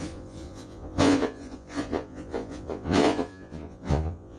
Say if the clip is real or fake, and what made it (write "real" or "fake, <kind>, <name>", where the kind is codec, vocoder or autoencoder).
fake, vocoder, Vocos